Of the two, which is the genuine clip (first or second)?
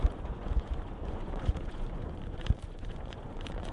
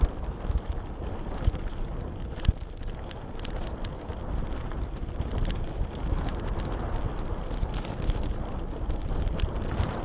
second